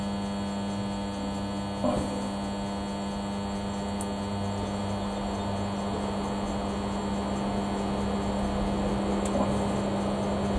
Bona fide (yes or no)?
yes